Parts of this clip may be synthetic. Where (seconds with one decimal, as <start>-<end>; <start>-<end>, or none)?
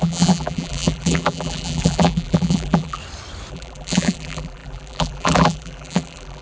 0.0-3.0; 3.5-6.4